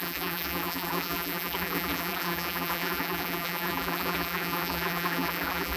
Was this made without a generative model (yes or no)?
no